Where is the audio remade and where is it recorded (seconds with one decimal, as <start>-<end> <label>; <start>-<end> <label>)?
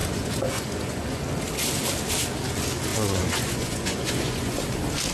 0.0-1.2 remade; 1.2-2.9 recorded; 2.9-4.6 remade; 4.6-5.1 recorded